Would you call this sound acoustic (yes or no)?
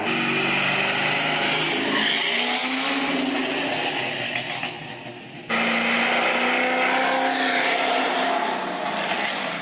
yes